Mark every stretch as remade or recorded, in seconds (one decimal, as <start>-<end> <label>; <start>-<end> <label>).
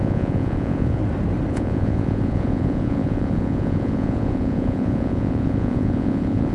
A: 0.0-1.0 remade; 1.0-1.5 recorded; 1.5-6.5 remade